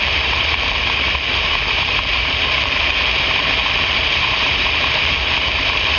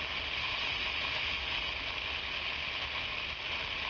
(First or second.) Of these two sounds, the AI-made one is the first